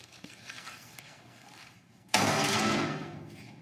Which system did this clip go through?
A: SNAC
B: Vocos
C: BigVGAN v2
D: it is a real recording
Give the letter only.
A